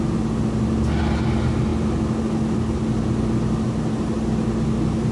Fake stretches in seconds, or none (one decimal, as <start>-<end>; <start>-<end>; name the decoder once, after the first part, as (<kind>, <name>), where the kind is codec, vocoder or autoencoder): none